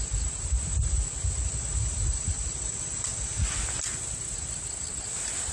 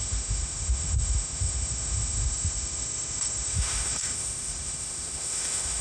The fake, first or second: second